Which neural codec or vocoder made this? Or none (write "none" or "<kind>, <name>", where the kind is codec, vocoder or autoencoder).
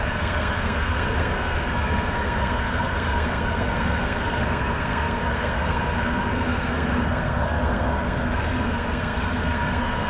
codec, SNAC